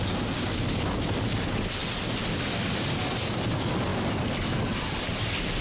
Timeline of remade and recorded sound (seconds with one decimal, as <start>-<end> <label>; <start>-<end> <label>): 0.0-5.6 recorded